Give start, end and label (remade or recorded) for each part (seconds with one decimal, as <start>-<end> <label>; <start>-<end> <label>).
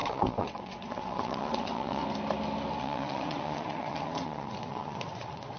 0.0-2.0 remade; 2.0-2.8 recorded; 2.8-5.6 remade